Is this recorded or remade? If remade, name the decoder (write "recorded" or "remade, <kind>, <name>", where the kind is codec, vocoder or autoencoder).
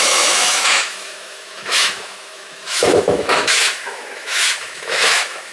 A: remade, autoencoder, DAC-VAE